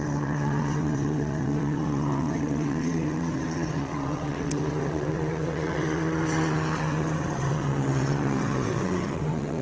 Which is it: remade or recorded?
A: remade